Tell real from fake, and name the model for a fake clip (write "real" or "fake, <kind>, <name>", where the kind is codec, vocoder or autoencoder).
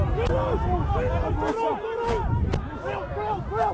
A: real